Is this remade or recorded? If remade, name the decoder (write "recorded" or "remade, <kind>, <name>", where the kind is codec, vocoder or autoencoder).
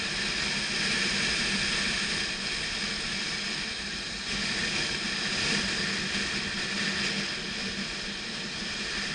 recorded